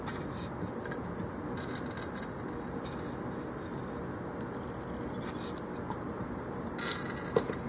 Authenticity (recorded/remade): recorded